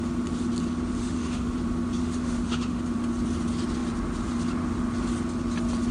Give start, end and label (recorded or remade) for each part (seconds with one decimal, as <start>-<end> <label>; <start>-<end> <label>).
0.0-1.0 recorded; 1.0-1.5 remade; 1.5-2.0 recorded; 2.0-2.8 remade; 2.8-5.9 recorded